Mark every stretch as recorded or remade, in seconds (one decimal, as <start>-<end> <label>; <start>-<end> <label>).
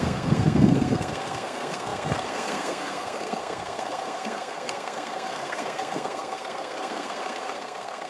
0.0-8.1 remade